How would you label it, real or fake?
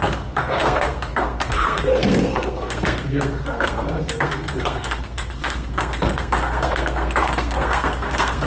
fake